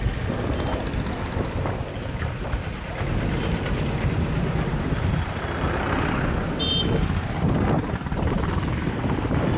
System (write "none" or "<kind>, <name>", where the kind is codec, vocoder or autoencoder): none